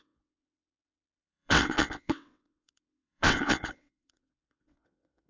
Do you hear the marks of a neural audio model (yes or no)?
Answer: yes